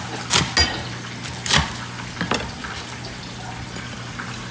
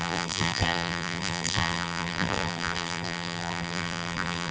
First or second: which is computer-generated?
second